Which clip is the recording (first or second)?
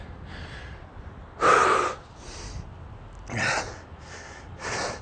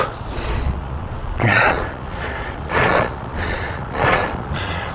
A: first